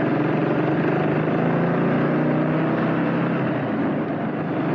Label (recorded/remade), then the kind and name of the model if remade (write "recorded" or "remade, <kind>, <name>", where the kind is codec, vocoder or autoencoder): recorded